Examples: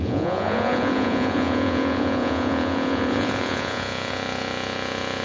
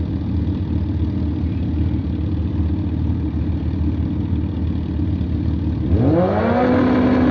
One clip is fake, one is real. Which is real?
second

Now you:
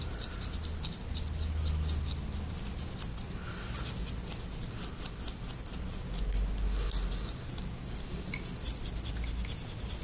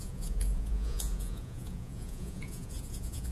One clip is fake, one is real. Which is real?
first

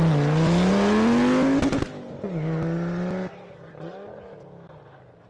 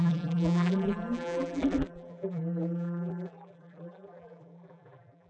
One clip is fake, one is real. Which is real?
first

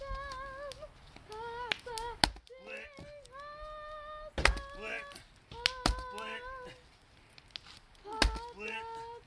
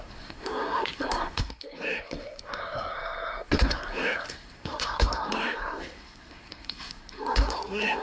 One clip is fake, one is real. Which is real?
first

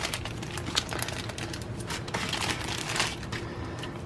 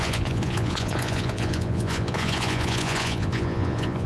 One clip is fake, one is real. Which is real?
first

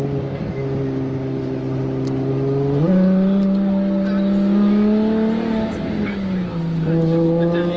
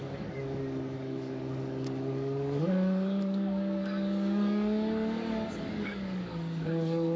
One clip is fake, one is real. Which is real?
first